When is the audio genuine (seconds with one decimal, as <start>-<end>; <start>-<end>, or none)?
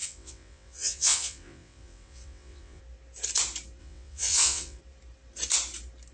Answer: 2.8-3.8; 4.8-6.1